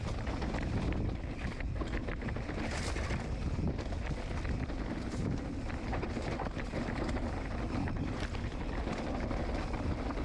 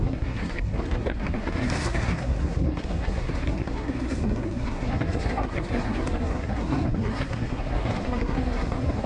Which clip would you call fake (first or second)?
second